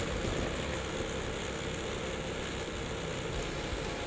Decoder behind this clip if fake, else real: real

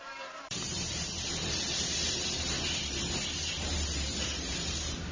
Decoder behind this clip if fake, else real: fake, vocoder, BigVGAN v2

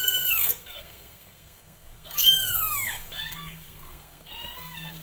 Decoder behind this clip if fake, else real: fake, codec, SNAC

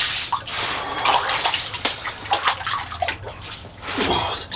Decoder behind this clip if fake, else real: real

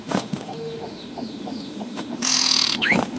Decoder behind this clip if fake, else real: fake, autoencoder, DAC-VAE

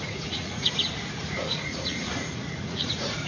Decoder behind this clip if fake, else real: fake, vocoder, Vocos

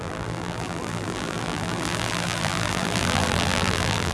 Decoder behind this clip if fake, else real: fake, vocoder, BigVGAN v2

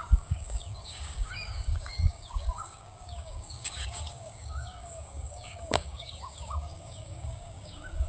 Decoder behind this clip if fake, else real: fake, codec, DAC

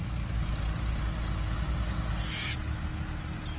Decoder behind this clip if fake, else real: real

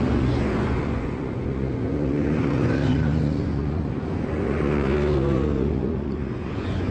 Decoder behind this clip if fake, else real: fake, vocoder, Vocos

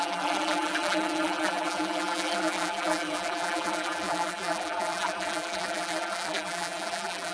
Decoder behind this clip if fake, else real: fake, vocoder, BigVGAN v2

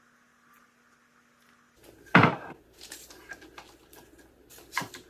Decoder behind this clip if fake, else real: real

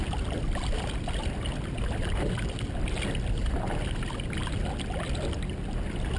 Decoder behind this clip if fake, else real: real